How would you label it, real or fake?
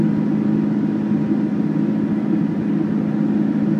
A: real